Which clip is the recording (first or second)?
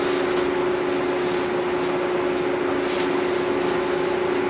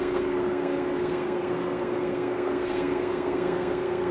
first